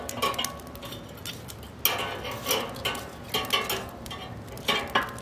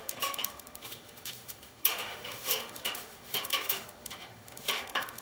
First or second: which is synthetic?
second